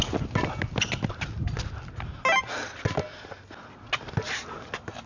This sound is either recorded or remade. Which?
recorded